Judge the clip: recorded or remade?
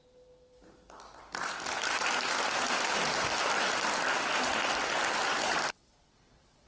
recorded